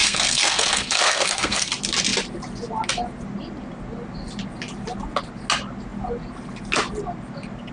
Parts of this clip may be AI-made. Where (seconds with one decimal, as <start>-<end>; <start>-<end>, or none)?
0.0-1.7